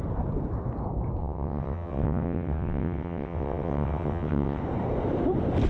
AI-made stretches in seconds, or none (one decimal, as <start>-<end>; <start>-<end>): 1.2-4.6